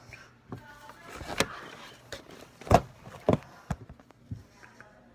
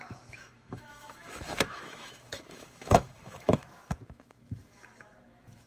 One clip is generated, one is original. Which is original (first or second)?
first